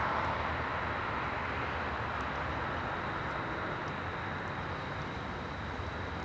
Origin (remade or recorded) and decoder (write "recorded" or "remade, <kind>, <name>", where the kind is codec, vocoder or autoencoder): recorded